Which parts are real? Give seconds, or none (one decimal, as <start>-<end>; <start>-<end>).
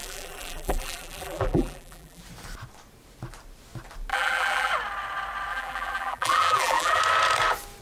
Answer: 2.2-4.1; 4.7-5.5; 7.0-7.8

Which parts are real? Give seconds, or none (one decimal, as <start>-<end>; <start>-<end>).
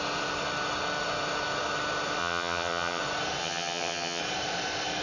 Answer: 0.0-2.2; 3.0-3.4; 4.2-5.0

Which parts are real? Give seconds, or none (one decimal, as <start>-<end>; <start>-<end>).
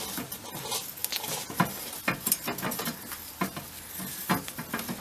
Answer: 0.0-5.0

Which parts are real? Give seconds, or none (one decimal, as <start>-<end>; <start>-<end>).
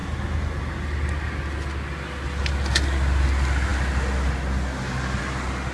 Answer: 0.0-5.7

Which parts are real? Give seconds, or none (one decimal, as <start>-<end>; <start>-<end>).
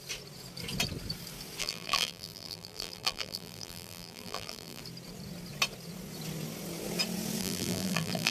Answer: 0.0-1.6; 4.8-7.4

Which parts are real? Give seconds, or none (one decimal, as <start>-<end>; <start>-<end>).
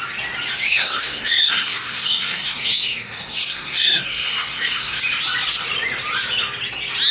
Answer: 0.0-0.7; 5.0-7.1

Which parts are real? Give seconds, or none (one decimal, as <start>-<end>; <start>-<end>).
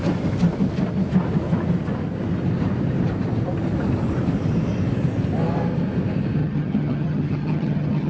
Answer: 0.0-6.4